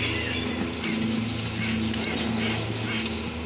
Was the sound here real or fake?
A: real